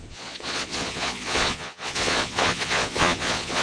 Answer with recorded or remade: remade